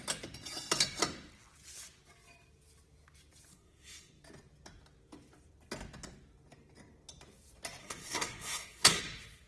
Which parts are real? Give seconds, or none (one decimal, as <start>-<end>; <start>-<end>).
0.0-3.5; 4.2-7.8; 9.0-9.5

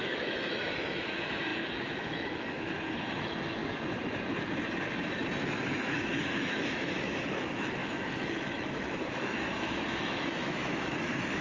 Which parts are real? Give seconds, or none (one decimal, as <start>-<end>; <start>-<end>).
3.6-5.4

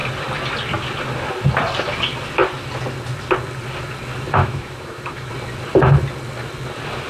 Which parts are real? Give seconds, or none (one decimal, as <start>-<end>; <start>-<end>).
0.0-4.4; 5.3-7.1

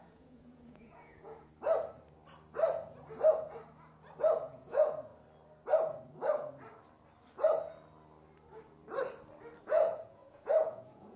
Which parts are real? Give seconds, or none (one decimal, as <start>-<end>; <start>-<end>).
1.5-4.2; 5.1-9.6

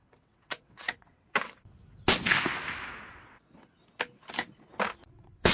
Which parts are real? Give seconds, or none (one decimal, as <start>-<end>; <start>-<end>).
1.8-3.1; 3.8-5.1

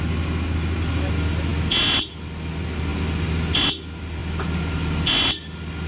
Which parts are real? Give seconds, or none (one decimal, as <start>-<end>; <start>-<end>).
0.0-5.9

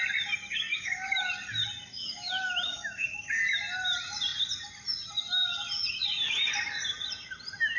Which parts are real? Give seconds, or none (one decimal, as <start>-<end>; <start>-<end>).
0.0-0.7; 1.3-2.0; 3.4-7.8

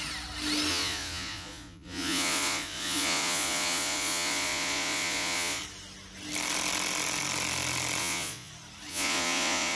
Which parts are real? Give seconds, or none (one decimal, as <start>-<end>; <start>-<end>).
0.0-0.7; 5.6-8.0; 8.5-8.9